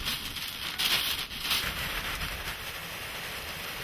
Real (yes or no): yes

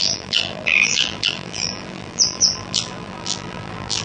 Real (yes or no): no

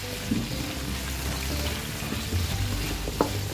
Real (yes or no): yes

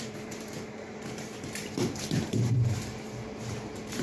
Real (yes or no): no